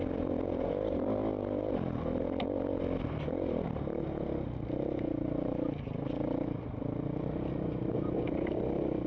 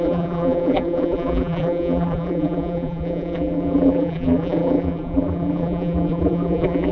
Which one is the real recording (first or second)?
first